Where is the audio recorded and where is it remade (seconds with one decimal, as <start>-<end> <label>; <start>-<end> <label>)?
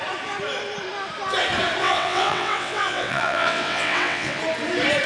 0.0-1.8 recorded; 1.8-4.4 remade; 4.4-5.1 recorded